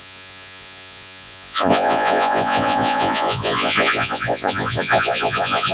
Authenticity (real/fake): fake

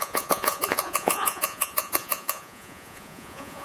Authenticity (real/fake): fake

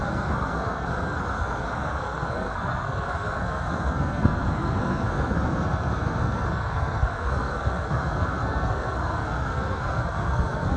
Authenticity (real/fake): fake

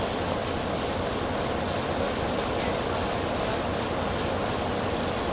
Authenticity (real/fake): real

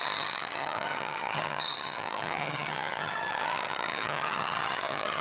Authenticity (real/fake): fake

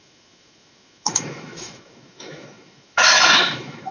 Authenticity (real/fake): fake